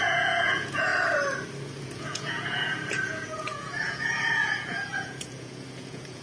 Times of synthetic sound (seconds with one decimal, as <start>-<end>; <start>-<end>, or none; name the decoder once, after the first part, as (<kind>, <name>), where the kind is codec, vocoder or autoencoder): 0.0-0.9 (vocoder, Vocos); 1.8-6.2